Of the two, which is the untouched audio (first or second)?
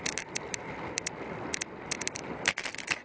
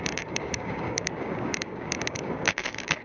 first